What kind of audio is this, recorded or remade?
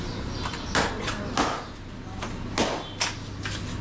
recorded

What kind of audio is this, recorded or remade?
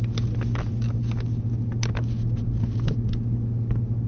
recorded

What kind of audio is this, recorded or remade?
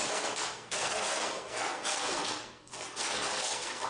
remade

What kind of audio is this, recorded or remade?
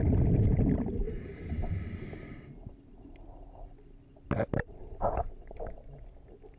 recorded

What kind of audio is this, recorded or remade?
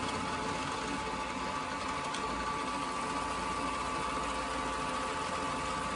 recorded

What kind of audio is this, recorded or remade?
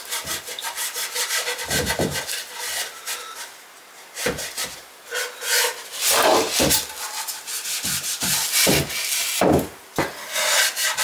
recorded